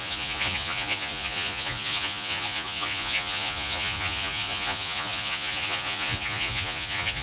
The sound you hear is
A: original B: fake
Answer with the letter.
B